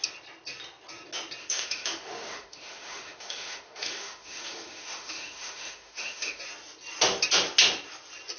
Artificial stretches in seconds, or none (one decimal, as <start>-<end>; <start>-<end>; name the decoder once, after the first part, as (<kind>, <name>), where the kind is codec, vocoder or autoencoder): 1.4-6.4 (autoencoder, DAC-VAE)